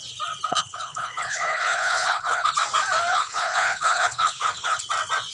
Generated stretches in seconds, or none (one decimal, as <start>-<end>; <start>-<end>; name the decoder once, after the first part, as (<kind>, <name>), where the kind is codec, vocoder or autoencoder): 0.5-2.5 (codec, HILCodec); 3.1-4.8